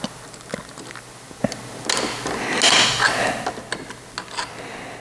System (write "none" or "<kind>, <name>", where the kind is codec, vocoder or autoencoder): none